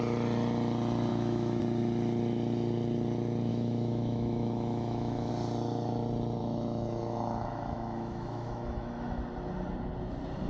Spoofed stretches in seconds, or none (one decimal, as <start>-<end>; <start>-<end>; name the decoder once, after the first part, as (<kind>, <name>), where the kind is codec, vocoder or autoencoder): 1.1-1.6 (autoencoder, DAC-VAE); 3.5-5.3; 6.4-9.2